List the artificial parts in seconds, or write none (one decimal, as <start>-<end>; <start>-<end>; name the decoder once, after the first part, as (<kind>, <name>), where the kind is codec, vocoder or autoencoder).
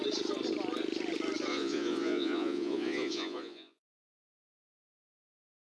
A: 1.5-3.8 (vocoder, Vocos)